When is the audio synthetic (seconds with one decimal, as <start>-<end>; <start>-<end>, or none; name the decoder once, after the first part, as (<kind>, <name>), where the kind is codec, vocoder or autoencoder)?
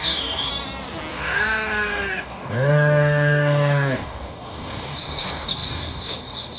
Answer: 0.0-0.5 (codec, DAC); 1.1-6.6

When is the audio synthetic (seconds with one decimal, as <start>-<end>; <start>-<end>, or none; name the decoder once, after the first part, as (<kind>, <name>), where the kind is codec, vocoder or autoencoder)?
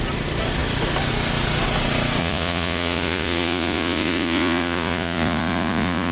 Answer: 2.2-6.1 (vocoder, Vocos)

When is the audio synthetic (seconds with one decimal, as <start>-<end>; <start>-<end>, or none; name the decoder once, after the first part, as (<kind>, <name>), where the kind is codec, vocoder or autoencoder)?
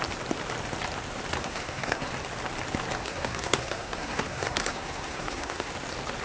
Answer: 1.4-2.1 (codec, SNAC); 3.0-5.7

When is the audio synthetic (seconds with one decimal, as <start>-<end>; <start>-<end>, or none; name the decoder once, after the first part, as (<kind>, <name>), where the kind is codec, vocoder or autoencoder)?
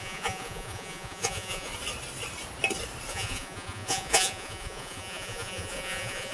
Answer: 0.0-1.7 (vocoder, Vocos); 3.1-6.3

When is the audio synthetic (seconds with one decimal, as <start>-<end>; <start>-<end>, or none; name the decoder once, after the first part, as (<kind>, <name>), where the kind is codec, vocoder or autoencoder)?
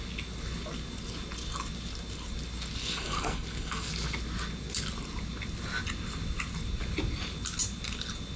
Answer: 2.8-3.9 (codec, SNAC)